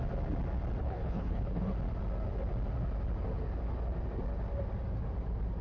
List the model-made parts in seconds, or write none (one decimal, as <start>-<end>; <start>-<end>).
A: 0.8-1.6